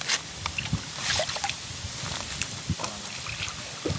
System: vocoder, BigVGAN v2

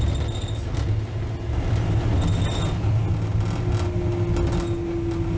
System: none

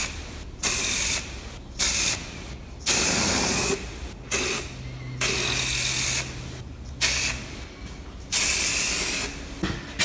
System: none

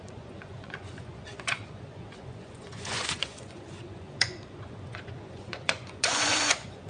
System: vocoder, Vocos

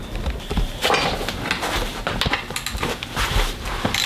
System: none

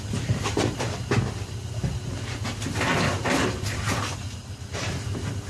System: none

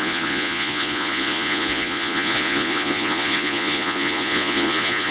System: vocoder, Vocos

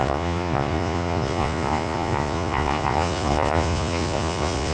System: vocoder, Vocos